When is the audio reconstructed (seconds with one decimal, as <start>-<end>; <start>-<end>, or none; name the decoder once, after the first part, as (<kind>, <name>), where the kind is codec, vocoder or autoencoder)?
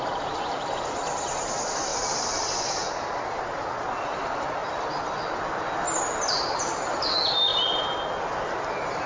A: none